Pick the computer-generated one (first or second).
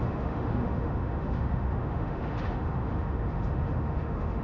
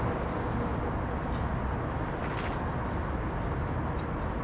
first